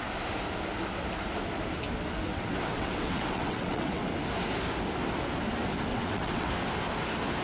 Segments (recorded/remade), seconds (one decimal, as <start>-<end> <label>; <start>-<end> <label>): 0.0-2.3 recorded; 2.3-4.0 remade; 4.0-5.9 recorded; 5.9-6.5 remade; 6.5-7.4 recorded